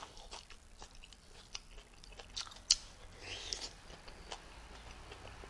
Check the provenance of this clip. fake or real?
real